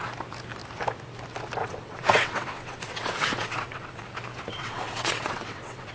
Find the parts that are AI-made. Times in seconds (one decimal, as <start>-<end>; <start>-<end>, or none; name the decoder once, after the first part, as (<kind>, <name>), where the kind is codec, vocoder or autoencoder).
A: 1.6-4.0 (vocoder, WaveNeXt); 4.5-5.9